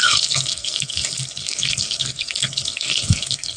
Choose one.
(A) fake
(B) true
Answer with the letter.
A